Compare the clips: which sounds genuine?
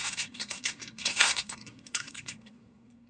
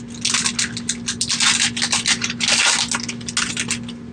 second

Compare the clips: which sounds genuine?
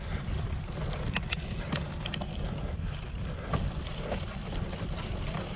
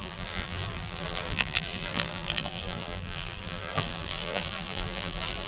first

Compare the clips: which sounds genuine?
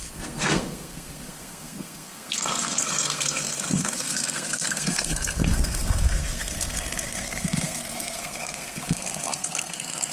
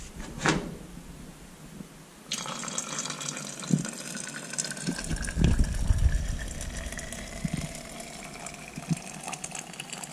second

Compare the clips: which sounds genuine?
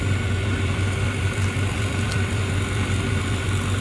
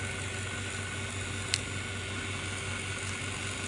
second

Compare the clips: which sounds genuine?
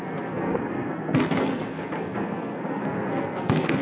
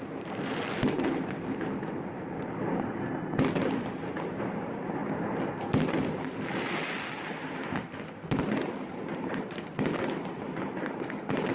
second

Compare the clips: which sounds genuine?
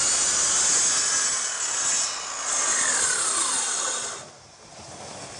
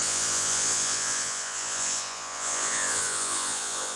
first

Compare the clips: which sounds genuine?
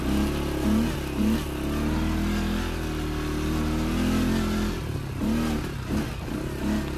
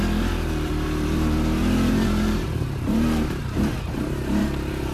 first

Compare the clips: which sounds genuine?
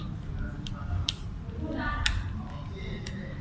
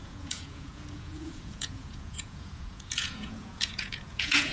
first